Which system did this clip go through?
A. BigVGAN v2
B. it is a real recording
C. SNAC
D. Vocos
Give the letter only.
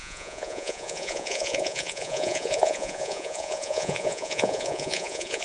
D